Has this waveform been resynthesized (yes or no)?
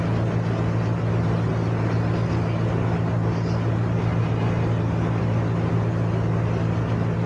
no